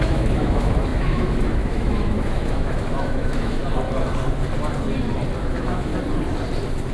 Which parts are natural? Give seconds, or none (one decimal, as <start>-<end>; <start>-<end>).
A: 3.6-5.4; 5.9-6.9